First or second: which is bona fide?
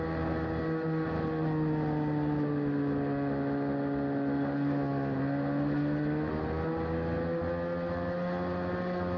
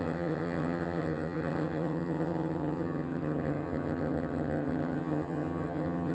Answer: first